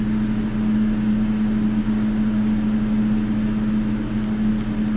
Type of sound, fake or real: real